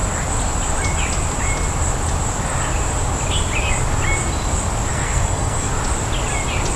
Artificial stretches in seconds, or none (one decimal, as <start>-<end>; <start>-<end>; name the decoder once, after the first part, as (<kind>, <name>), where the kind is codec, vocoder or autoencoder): 4.9-5.7 (codec, SNAC)